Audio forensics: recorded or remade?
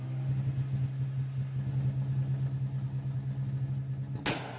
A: recorded